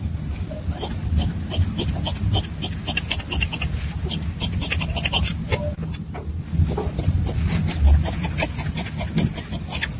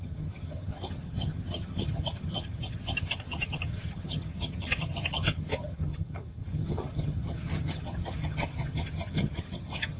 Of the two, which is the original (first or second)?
first